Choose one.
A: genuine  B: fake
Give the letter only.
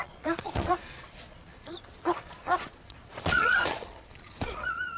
B